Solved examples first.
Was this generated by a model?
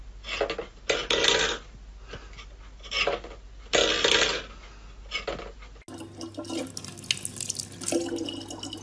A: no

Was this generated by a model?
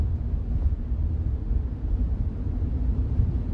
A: no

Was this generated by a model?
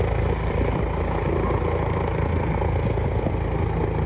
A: no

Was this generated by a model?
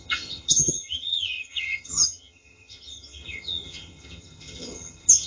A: yes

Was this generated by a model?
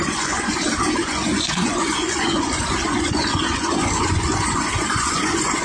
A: yes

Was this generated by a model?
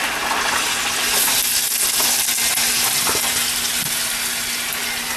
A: no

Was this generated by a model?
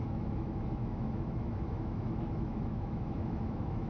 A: yes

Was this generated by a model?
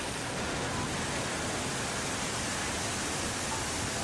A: no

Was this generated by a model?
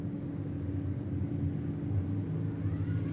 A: no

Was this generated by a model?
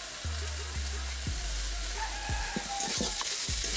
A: no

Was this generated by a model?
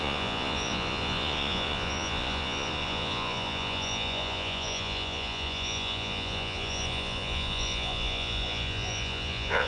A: yes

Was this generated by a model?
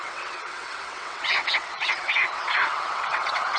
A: yes